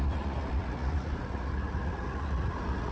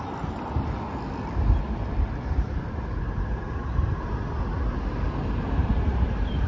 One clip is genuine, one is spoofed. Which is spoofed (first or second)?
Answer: first